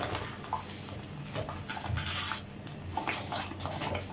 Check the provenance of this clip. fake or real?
real